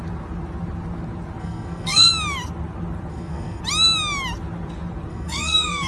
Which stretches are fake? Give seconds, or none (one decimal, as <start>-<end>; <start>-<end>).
1.4-2.1; 3.1-3.6; 5.1-5.9